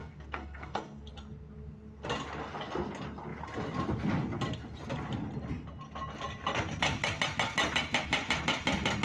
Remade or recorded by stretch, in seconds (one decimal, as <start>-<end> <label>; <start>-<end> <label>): 0.0-1.1 remade; 1.1-9.0 recorded